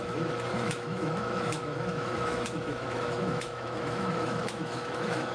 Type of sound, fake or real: fake